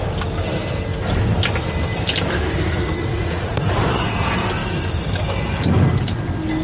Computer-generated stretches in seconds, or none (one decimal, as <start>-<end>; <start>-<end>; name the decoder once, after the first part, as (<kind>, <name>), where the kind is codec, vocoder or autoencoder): 3.0-3.9 (vocoder, Vocos)